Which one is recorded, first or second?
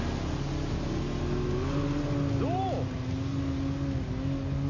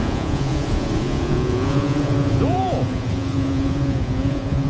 first